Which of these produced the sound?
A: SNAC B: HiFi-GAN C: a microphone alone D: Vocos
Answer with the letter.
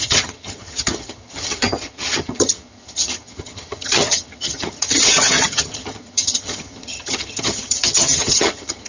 B